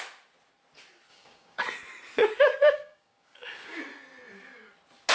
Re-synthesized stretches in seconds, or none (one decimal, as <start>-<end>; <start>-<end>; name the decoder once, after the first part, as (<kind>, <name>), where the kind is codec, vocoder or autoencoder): 1.1-1.6 (codec, DAC); 2.2-3.8